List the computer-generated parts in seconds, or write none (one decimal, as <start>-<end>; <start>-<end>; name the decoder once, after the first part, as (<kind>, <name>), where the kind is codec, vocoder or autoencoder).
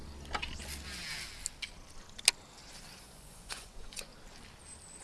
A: 3.0-4.1 (vocoder, Vocos)